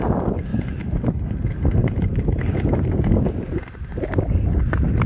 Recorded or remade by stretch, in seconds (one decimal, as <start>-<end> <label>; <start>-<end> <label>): 0.0-0.5 remade; 0.5-1.1 recorded; 1.1-1.8 remade; 1.8-2.6 recorded; 2.6-5.1 remade